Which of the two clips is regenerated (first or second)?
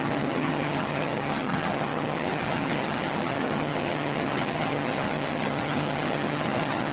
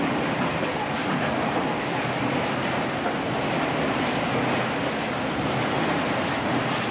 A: first